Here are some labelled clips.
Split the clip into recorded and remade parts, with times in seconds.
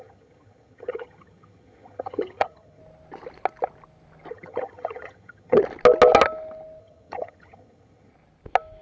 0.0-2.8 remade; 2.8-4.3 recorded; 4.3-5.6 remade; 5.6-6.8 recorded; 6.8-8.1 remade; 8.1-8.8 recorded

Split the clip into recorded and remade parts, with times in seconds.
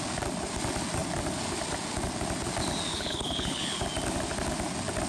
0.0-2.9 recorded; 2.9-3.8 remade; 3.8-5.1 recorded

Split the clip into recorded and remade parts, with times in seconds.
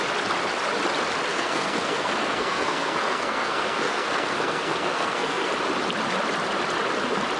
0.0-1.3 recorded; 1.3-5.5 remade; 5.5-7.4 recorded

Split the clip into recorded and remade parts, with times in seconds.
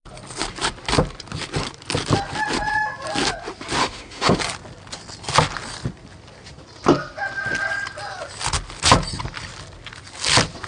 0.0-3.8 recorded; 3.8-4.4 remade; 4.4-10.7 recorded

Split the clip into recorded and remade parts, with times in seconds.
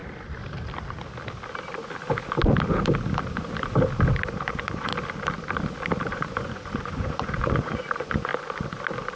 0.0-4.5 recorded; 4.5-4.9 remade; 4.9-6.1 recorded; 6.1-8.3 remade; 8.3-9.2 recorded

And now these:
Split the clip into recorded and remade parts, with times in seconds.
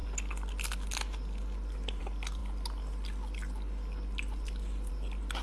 0.0-5.4 recorded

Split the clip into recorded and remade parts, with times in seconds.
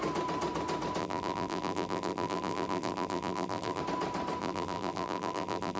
0.0-1.0 recorded; 1.0-3.8 remade; 3.8-4.4 recorded; 4.4-5.8 remade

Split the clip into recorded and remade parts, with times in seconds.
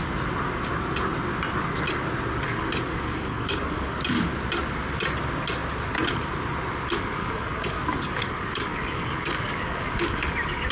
0.0-2.5 recorded; 2.5-4.2 remade; 4.2-7.1 recorded; 7.1-10.7 remade